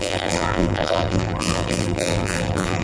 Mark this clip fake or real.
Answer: fake